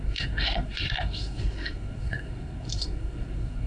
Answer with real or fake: fake